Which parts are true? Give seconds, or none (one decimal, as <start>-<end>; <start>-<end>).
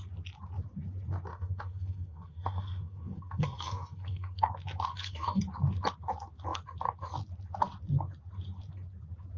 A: 0.0-1.3; 4.5-4.9; 5.4-9.4